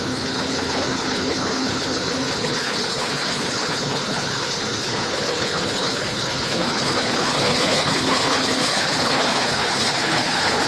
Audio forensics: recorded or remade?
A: remade